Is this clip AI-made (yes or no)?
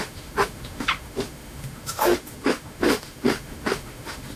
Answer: yes